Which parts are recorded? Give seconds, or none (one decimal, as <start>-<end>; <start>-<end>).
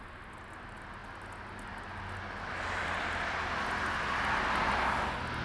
0.0-5.4